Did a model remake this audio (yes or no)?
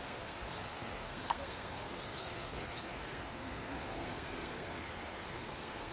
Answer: yes